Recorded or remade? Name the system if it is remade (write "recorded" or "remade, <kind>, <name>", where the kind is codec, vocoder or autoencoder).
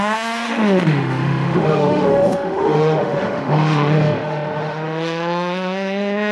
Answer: remade, autoencoder, DAC-VAE